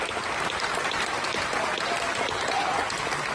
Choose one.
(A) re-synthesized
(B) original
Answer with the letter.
B